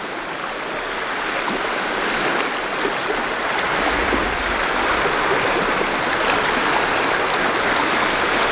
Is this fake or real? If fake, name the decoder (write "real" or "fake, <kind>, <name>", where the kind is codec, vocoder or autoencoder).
real